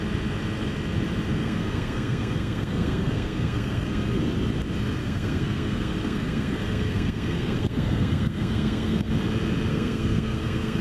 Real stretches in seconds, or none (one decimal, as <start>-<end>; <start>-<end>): 0.0-1.4; 4.2-5.0; 9.1-9.7